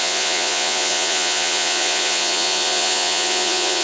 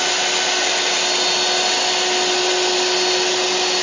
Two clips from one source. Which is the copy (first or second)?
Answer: first